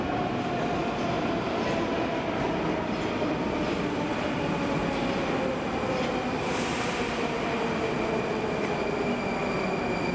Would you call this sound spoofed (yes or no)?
no